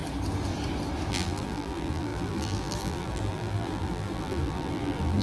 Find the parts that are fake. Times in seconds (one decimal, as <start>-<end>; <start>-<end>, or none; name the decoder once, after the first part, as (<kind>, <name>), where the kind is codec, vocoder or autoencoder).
1.1-5.2 (vocoder, BigVGAN v2)